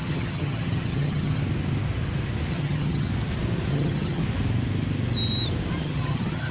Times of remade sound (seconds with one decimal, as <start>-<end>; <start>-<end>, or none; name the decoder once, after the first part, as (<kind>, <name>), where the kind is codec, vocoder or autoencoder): 0.0-1.4 (vocoder, HiFi-GAN); 2.5-3.1; 3.7-4.2; 5.8-6.5